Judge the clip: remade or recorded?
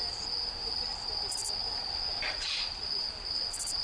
recorded